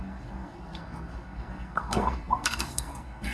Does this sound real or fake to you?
fake